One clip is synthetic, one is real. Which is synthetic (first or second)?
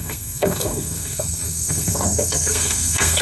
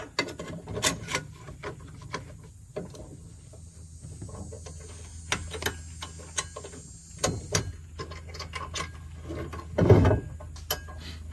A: first